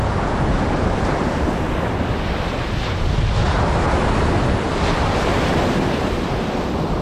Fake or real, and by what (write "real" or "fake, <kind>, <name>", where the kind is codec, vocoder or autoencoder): real